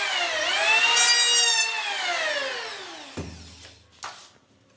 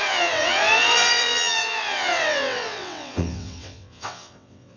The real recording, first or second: first